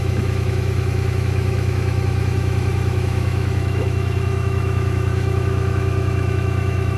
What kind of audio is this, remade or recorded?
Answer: remade